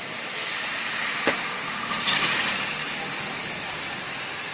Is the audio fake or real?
fake